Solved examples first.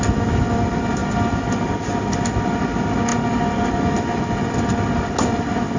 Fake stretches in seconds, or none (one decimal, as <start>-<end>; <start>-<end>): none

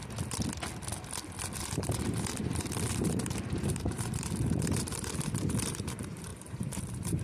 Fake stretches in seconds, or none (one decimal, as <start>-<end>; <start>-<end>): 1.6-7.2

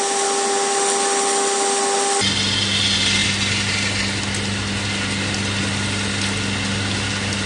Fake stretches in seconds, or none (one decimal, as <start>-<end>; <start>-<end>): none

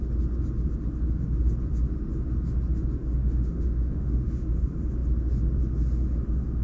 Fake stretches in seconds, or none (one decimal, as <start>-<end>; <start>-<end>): 3.2-4.5

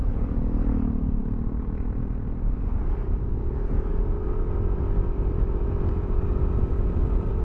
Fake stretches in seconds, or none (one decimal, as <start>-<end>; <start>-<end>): 3.9-4.4